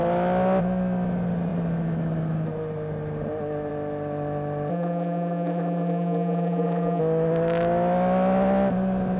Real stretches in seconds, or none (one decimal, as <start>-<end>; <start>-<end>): 0.0-4.7; 7.0-9.2